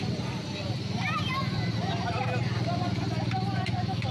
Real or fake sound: real